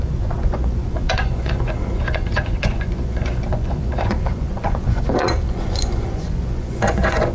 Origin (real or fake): fake